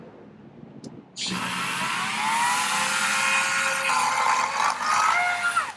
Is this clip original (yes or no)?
yes